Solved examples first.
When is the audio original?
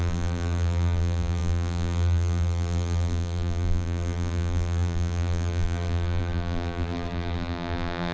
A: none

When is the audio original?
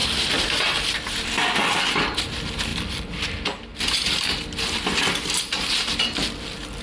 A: 2.2-2.7; 3.2-3.7; 4.4-6.8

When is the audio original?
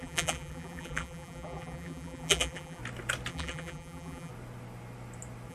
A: 2.8-3.3; 4.3-5.5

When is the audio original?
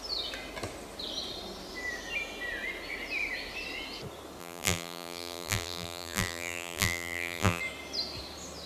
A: 0.0-4.4; 7.6-8.7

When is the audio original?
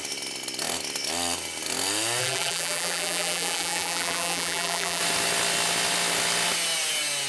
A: 0.0-2.2; 5.0-7.3